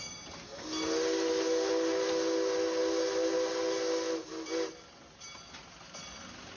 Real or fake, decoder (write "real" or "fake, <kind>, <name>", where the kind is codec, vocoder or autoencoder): real